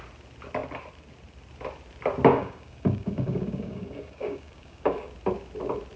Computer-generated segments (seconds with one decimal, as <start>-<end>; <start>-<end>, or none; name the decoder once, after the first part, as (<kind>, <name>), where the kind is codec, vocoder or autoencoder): 2.3-5.1 (codec, DAC)